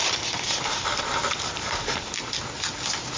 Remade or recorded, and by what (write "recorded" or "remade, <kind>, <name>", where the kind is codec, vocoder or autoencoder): recorded